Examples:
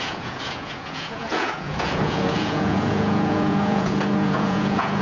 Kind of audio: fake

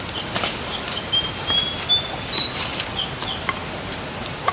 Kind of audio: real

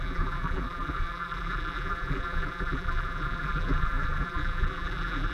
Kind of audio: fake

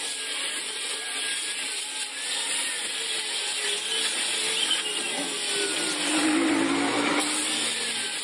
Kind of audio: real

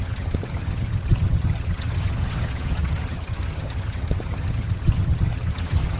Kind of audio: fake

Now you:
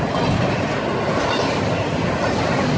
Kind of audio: real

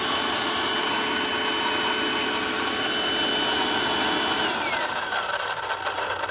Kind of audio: real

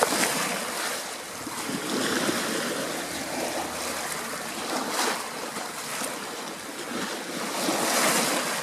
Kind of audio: real